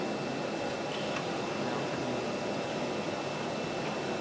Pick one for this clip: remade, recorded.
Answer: recorded